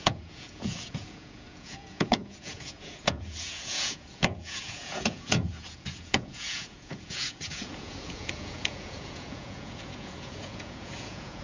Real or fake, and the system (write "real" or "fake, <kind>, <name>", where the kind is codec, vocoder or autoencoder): fake, vocoder, Vocos